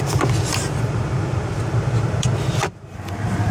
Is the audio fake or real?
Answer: fake